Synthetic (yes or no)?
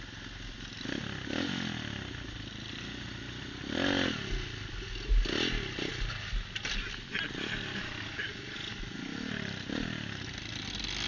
no